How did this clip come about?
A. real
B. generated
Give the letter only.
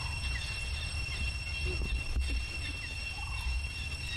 A